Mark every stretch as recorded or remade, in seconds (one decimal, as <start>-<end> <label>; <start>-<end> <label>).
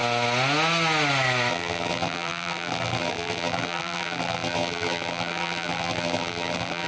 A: 0.0-1.5 recorded; 1.5-6.9 remade